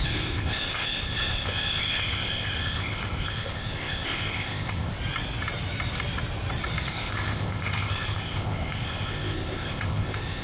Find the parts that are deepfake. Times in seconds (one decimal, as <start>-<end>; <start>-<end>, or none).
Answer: 0.0-4.9; 6.9-10.4